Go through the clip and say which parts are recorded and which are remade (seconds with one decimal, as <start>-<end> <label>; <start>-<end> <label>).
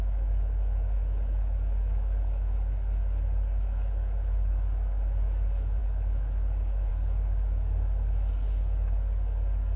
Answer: 0.0-9.8 remade